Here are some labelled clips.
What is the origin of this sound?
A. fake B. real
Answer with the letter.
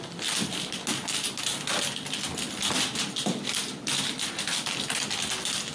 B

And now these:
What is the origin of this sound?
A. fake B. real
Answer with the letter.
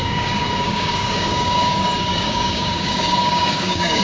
A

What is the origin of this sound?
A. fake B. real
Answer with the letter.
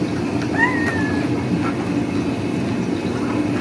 B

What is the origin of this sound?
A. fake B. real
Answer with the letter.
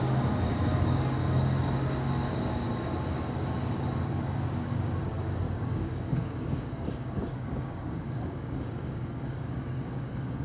A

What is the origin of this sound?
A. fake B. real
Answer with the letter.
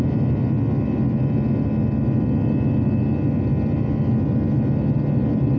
B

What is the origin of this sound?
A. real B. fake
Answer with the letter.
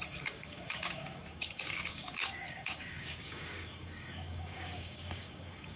B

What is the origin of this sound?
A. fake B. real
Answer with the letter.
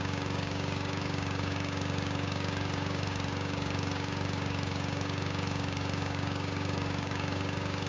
A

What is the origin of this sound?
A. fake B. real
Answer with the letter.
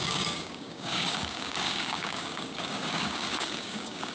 A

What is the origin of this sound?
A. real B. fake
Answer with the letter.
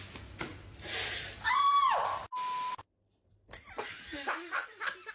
A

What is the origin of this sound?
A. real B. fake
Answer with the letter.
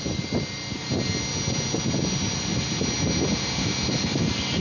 A